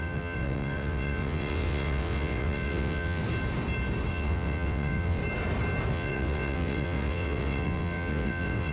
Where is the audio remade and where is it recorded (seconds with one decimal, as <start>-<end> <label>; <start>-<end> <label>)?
0.0-3.2 remade; 3.2-4.1 recorded; 4.1-5.2 remade; 5.2-5.9 recorded; 5.9-8.7 remade